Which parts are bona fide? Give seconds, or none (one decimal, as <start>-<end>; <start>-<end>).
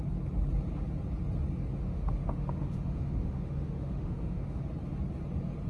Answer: 0.0-1.8; 4.6-5.7